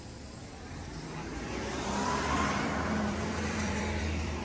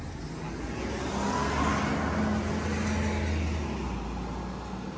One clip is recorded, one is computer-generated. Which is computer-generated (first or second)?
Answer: first